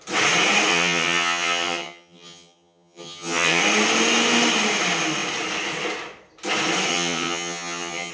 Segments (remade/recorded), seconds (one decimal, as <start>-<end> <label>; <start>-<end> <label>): 0.0-0.7 recorded; 0.7-3.6 remade; 3.6-6.9 recorded; 6.9-8.1 remade

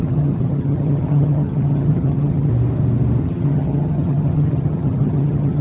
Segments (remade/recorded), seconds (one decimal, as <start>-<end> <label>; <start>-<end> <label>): 0.0-2.5 remade; 2.5-3.2 recorded; 3.2-5.6 remade